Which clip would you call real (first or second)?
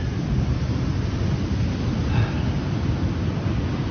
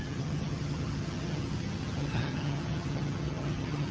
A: first